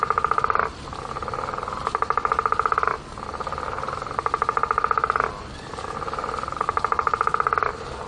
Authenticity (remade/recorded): recorded